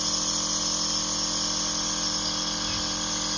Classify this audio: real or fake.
real